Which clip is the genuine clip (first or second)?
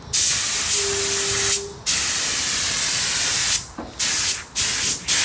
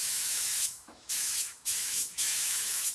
first